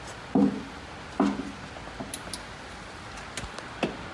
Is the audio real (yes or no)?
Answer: yes